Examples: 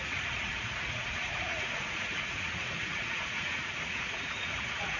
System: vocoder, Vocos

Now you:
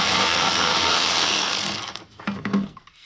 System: codec, SNAC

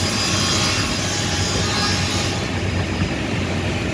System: none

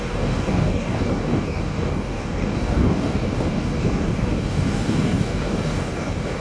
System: codec, DAC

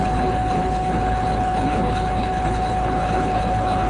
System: codec, HILCodec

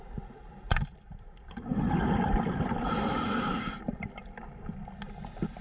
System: none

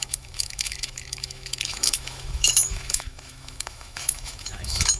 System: autoencoder, DAC-VAE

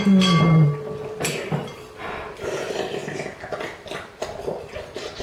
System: none